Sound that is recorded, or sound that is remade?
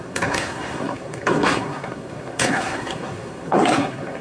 remade